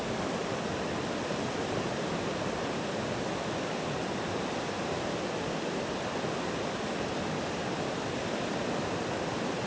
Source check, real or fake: real